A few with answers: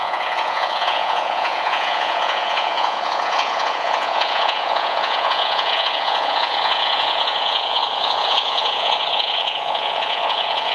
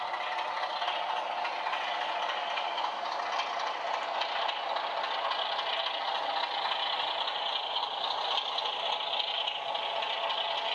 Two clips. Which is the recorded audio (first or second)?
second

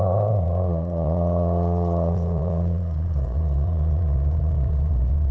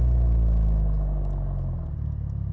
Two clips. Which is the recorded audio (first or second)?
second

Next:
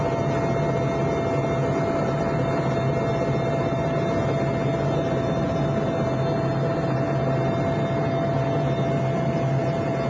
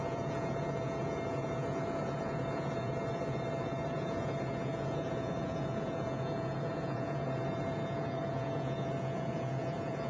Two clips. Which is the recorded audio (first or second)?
first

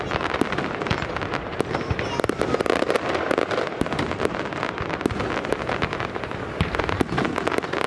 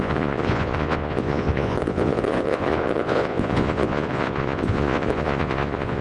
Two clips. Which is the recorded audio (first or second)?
first